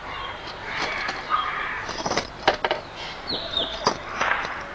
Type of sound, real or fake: fake